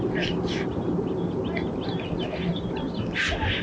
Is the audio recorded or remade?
recorded